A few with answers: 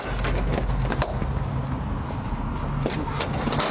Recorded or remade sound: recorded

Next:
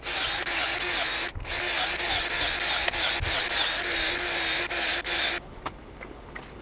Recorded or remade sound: recorded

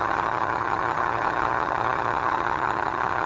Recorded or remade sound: remade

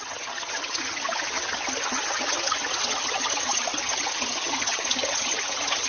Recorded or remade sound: remade